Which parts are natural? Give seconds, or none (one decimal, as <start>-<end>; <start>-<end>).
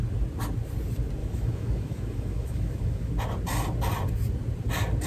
0.0-1.2; 3.1-5.1